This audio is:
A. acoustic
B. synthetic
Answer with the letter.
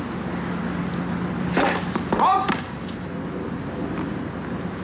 A